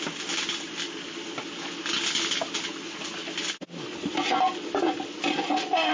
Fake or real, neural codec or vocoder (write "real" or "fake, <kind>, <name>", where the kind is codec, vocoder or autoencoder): real